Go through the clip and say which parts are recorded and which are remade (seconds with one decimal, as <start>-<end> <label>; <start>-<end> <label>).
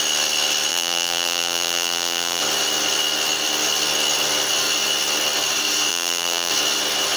0.0-0.7 recorded; 0.7-2.4 remade; 2.4-5.9 recorded; 5.9-6.5 remade; 6.5-7.2 recorded